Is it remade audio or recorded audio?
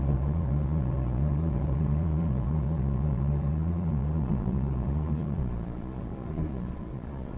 remade